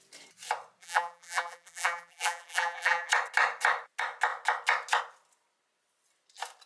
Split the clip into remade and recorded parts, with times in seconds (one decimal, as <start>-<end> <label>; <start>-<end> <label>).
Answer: 0.0-0.8 recorded; 0.8-3.1 remade; 3.1-6.7 recorded